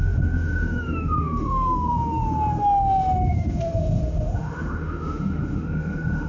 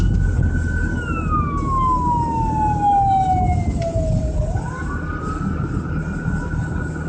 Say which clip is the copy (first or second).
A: first